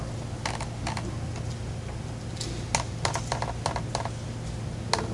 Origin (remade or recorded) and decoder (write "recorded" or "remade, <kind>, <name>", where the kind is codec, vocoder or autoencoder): recorded